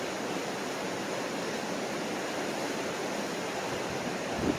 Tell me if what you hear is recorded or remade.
recorded